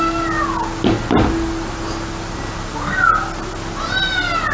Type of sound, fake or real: real